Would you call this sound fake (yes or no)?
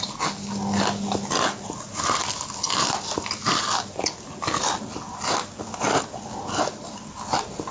no